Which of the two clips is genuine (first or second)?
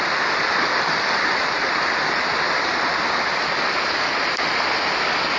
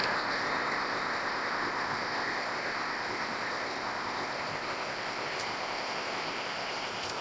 first